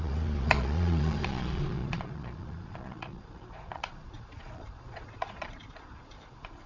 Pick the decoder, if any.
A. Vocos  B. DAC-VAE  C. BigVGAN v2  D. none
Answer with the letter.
A